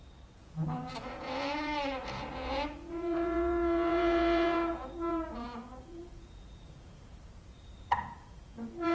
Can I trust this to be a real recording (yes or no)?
no